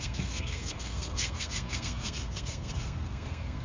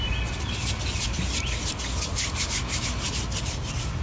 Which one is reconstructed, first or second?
first